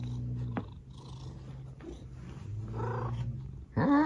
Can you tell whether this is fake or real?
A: real